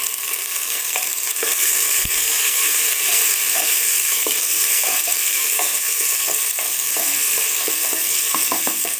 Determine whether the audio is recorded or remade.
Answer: remade